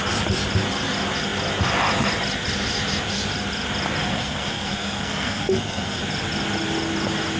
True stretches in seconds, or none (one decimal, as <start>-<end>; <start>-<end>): 0.0-4.1; 6.0-7.4